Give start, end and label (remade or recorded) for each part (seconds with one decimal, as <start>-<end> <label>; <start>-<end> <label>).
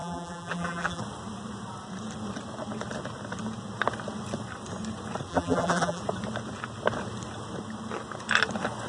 0.0-1.0 remade; 1.0-5.3 recorded; 5.3-6.0 remade; 6.0-8.9 recorded